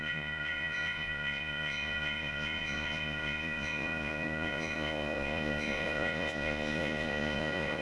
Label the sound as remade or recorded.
remade